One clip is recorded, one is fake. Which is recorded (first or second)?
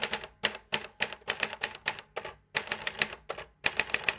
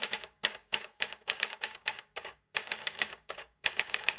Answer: first